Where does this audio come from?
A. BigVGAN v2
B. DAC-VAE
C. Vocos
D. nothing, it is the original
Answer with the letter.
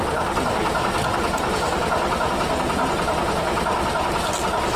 D